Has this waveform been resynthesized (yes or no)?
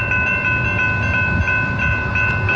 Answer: no